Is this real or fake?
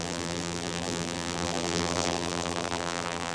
fake